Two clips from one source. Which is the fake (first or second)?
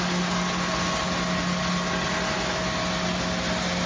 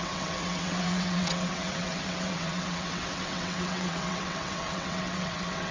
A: second